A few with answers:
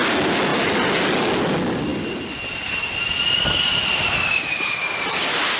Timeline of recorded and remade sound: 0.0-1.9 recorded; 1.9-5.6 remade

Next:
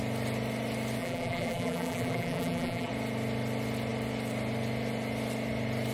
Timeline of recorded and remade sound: 0.0-1.0 recorded; 1.0-2.9 remade; 2.9-5.9 recorded

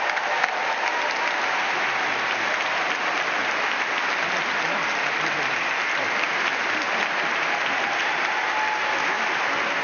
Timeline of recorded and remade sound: 0.0-3.4 recorded; 3.4-6.3 remade; 6.3-9.8 recorded

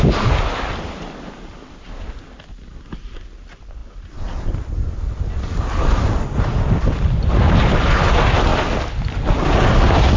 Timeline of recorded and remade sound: 0.0-3.8 recorded; 3.8-5.0 remade; 5.0-10.2 recorded

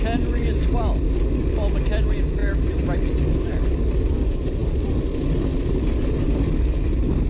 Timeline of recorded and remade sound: 0.0-2.4 recorded; 2.4-3.5 remade; 3.5-7.3 recorded

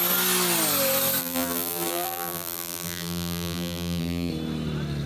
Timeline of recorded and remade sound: 0.0-1.2 recorded; 1.2-4.3 remade; 4.3-5.1 recorded

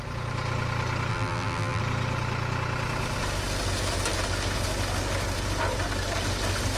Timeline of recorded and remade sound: 0.0-1.1 recorded; 1.1-1.8 remade; 1.8-6.8 recorded